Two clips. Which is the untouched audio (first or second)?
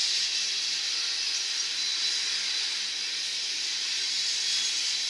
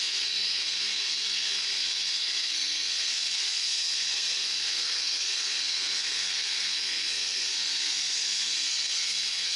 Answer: first